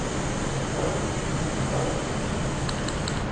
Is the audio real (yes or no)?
yes